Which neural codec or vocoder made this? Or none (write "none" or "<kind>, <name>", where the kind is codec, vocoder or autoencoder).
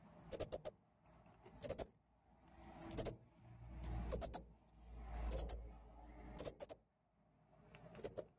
none